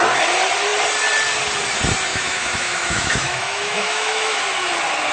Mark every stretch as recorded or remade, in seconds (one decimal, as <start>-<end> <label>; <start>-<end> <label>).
0.0-2.1 recorded; 2.1-4.4 remade; 4.4-5.1 recorded